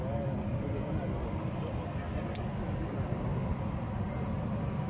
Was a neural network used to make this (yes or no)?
no